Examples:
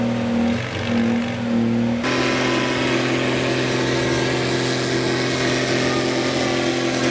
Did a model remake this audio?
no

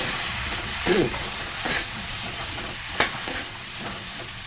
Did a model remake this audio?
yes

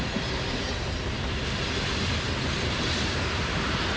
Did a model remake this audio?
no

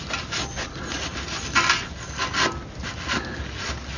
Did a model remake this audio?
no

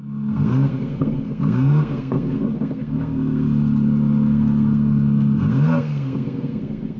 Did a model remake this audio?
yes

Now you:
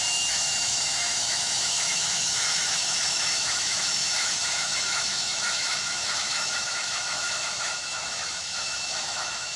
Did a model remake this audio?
yes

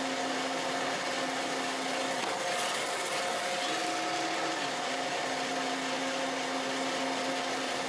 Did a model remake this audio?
no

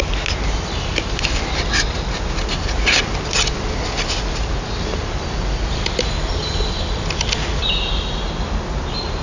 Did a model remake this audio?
no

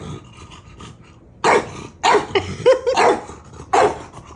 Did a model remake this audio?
no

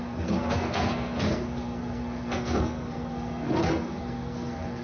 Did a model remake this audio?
yes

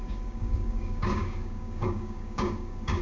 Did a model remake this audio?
yes